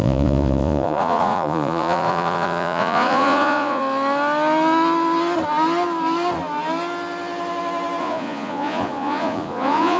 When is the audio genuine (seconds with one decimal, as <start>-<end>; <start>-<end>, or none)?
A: 3.8-8.0